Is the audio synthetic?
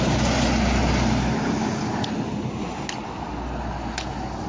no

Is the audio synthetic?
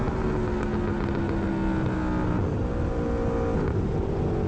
no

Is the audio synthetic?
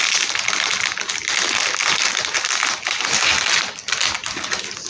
no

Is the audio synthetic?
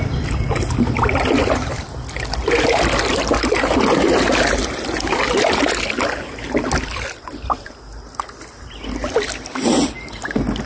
no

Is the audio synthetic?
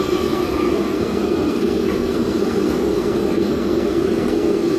yes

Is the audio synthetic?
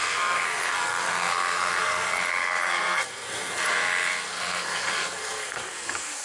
yes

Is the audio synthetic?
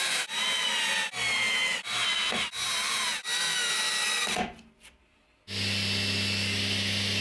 no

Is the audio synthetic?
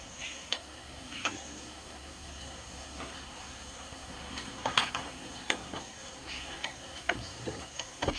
yes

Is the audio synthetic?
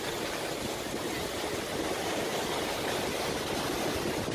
no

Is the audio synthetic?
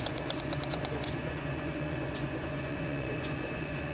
yes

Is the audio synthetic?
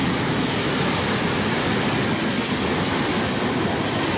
no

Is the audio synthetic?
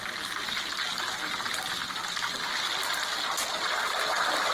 no